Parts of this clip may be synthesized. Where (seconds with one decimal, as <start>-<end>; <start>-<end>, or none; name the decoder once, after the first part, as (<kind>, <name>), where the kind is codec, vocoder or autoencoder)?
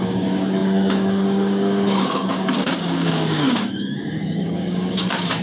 0.0-5.4 (codec, DAC)